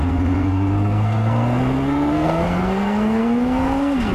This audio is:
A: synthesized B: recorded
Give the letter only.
A